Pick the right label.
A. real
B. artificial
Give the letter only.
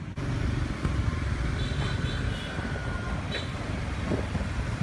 A